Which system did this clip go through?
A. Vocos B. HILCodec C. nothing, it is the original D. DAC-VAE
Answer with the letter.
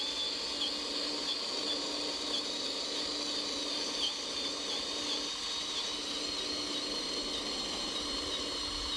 C